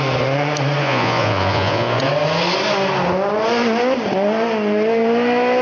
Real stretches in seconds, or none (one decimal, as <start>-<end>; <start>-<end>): 0.0-0.8; 2.0-5.6